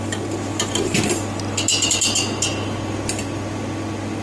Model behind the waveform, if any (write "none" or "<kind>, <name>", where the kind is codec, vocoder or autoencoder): none